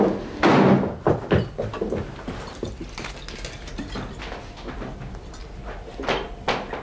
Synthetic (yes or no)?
no